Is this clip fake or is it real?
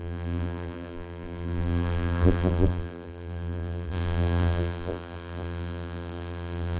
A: fake